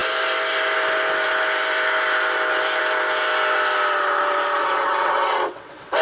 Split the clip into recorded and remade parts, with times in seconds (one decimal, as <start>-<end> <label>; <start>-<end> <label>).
0.0-4.6 recorded; 4.6-6.0 remade

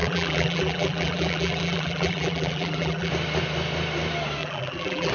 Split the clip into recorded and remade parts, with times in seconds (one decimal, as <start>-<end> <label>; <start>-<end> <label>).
0.0-3.1 remade; 3.1-4.4 recorded; 4.4-5.1 remade

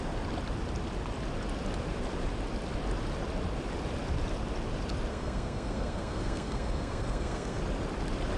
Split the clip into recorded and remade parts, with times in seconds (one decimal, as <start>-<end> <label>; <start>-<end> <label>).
0.0-5.1 recorded; 5.1-7.6 remade; 7.6-8.4 recorded

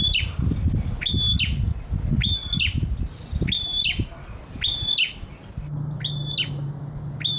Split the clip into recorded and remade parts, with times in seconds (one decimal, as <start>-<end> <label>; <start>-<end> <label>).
0.0-7.4 recorded

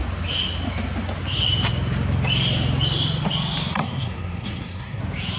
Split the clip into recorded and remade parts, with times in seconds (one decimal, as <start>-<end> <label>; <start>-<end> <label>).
0.0-3.8 recorded; 3.8-5.0 remade; 5.0-5.4 recorded